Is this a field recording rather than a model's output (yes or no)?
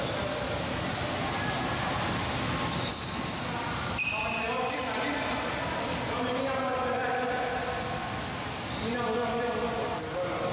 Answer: yes